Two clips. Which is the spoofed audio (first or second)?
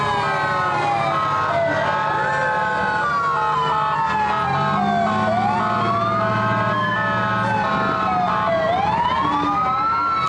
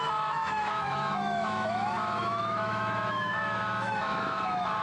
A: second